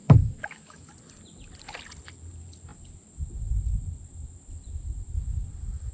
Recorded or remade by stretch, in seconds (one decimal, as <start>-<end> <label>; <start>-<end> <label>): 0.0-0.9 remade; 0.9-5.9 recorded